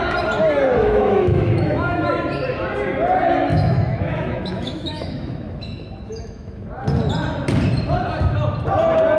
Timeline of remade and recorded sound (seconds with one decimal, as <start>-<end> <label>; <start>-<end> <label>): 0.0-0.8 recorded; 0.8-2.1 remade; 2.1-3.5 recorded; 3.5-6.7 remade; 6.7-9.2 recorded